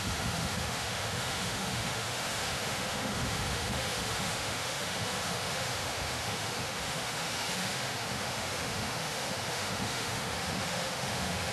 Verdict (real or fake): fake